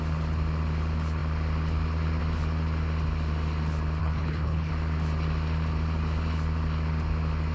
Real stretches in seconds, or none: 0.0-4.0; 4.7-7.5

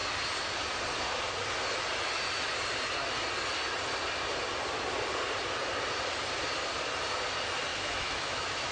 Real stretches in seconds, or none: 0.0-7.7

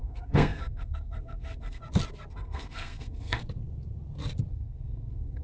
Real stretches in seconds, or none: 1.8-2.3; 3.4-4.5